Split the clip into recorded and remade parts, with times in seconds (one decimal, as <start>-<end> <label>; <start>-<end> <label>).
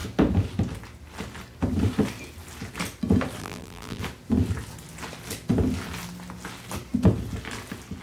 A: 0.0-3.4 recorded; 3.4-4.0 remade; 4.0-8.0 recorded